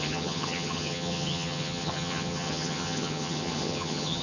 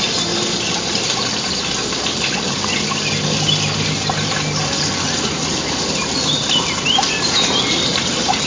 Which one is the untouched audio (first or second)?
second